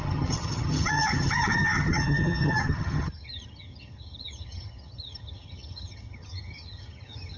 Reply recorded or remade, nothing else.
remade